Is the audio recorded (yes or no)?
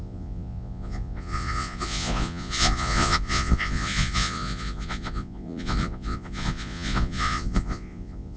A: no